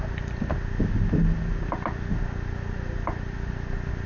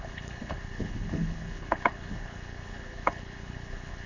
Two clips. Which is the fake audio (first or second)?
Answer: second